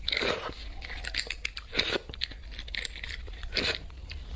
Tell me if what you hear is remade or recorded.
recorded